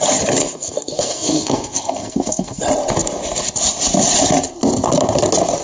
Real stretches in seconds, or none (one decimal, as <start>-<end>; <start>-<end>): 0.0-0.4; 2.6-5.6